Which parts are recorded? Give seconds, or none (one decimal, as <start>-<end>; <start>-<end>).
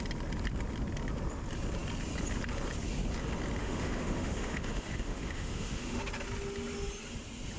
0.0-3.6; 6.0-7.6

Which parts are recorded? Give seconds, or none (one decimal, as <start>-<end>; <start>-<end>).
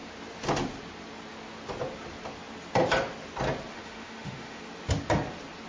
0.0-3.7; 4.6-5.7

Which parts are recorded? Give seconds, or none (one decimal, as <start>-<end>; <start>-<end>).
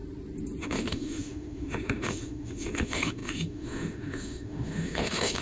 0.0-0.6